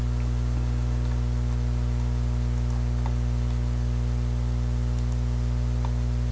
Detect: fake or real real